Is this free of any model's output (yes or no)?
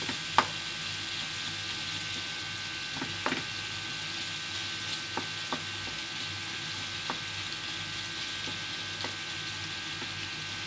yes